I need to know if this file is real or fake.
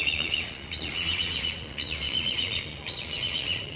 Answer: fake